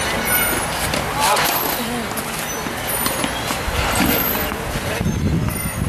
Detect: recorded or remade recorded